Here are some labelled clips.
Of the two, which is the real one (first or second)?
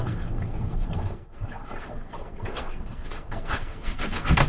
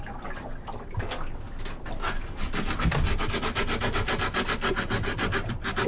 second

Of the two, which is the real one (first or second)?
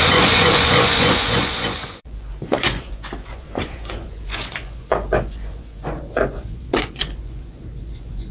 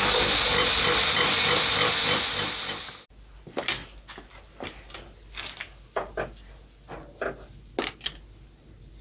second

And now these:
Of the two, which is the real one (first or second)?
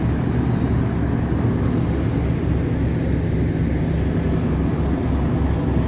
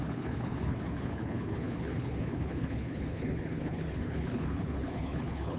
first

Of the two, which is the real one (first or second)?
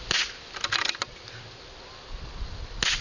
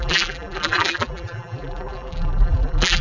first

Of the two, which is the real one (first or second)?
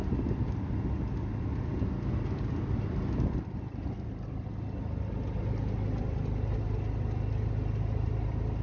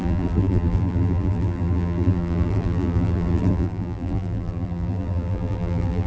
first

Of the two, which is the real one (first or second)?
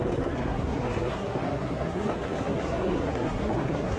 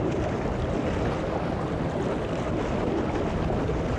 second